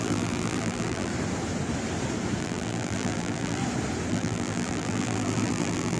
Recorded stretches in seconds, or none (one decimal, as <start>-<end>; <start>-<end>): 1.1-2.4; 3.6-4.1